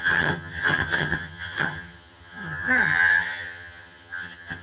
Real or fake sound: fake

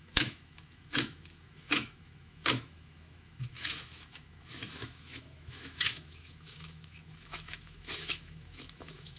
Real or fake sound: fake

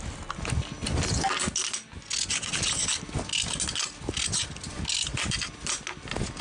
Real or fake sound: real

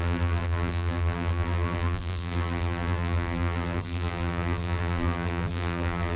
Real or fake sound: fake